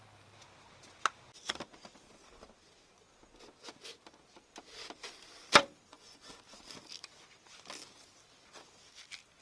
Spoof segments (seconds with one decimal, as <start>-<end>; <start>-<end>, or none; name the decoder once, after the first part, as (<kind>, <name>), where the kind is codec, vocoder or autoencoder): 5.9-6.4 (vocoder, Vocos)